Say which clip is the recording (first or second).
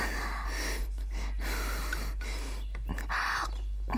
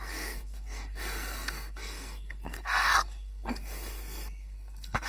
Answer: first